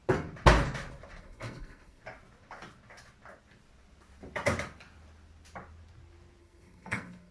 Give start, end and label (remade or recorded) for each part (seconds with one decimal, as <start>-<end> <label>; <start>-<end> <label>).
0.0-1.2 recorded; 1.2-2.0 remade; 2.0-6.4 recorded; 6.4-7.3 remade